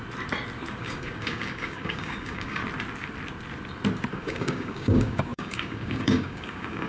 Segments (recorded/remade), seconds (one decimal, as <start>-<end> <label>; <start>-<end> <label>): 0.0-0.8 recorded; 0.8-2.6 remade; 2.6-4.1 recorded; 4.1-6.9 remade